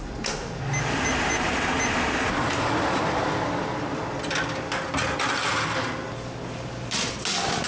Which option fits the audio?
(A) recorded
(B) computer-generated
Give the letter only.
A